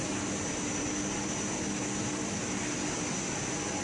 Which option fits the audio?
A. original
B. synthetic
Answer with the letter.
A